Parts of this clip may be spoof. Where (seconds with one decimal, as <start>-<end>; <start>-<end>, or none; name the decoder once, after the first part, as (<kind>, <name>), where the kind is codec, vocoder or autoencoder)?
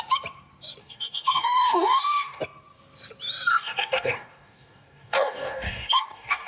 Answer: 0.8-2.4 (codec, DAC); 3.5-6.5